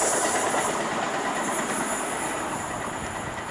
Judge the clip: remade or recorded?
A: recorded